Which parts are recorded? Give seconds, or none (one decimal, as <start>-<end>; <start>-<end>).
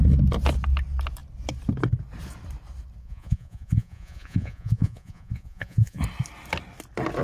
0.0-3.0; 6.0-7.2